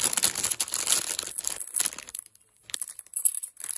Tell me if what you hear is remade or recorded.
recorded